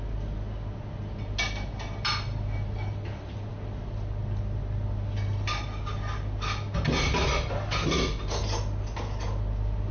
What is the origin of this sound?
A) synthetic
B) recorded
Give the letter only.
B